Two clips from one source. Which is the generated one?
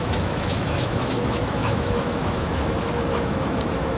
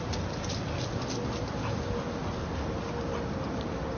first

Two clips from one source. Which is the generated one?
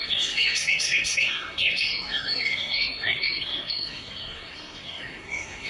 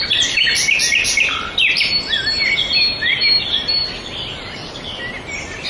first